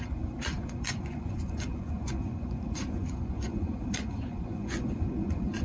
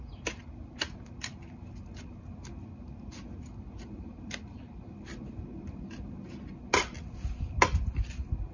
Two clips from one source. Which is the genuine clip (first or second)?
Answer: second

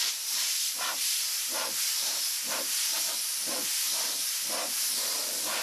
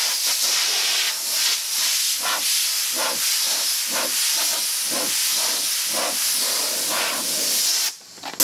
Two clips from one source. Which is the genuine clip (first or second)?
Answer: second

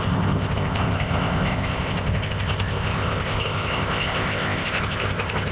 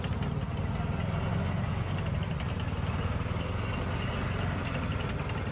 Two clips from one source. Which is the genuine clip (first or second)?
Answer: second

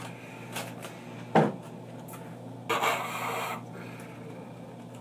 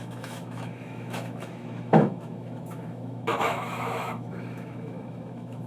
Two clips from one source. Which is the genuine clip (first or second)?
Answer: first